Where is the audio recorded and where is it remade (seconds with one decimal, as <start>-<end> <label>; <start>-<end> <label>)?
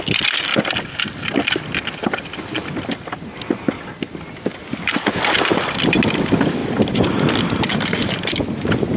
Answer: 0.0-0.5 remade; 0.5-4.8 recorded; 4.8-9.0 remade